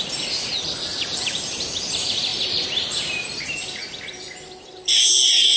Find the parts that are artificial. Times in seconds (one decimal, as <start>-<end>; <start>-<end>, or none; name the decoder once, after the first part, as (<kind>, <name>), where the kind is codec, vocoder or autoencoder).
0.9-1.8 (vocoder, BigVGAN v2); 2.3-3.8